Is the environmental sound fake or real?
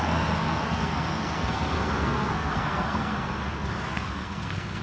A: fake